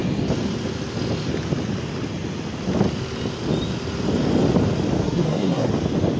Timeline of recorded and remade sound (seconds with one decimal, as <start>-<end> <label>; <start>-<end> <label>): 0.0-5.0 recorded; 5.0-5.7 remade; 5.7-6.2 recorded